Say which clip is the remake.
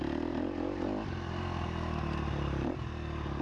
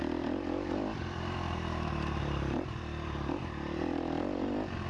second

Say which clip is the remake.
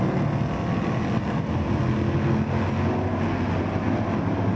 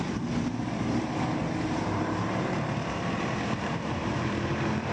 second